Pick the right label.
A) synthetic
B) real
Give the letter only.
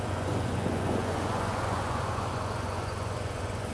A